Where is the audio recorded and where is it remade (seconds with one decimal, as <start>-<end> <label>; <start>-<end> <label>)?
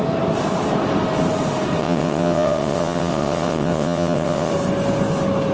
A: 0.0-1.8 recorded; 1.8-4.5 remade; 4.5-5.5 recorded